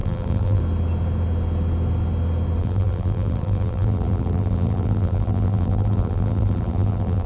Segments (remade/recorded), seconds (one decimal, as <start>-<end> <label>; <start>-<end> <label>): 0.0-0.6 remade; 0.6-2.6 recorded; 2.6-7.3 remade